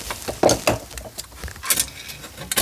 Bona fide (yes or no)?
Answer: yes